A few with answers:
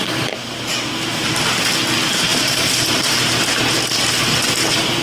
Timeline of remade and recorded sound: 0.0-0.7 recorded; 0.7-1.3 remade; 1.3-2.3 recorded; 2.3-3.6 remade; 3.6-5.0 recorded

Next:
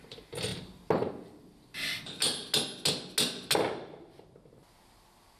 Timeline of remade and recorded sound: 0.0-0.5 remade; 0.5-1.1 recorded; 1.1-2.2 remade; 2.2-5.4 recorded

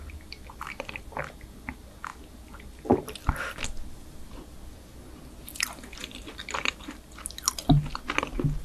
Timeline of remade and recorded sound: 0.0-8.6 recorded

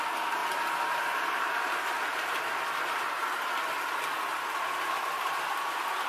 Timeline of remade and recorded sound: 0.0-0.4 remade; 0.4-0.9 recorded; 0.9-2.1 remade; 2.1-6.1 recorded

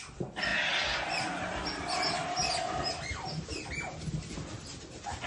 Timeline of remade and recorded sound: 0.0-5.3 recorded